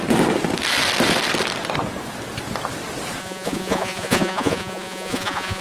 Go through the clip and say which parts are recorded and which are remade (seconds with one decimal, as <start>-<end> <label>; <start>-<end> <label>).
0.0-3.2 recorded; 3.2-5.6 remade